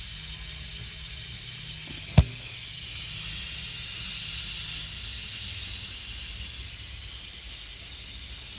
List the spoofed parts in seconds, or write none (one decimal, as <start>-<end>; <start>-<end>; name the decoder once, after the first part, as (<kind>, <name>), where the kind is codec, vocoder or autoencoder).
none